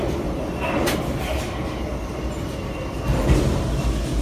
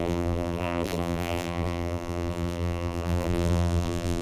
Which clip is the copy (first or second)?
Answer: second